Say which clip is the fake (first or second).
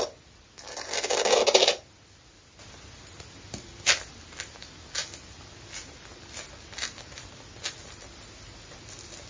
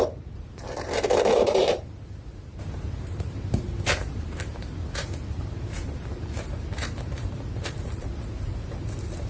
second